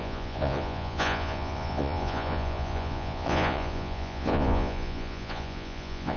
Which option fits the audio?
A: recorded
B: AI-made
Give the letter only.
B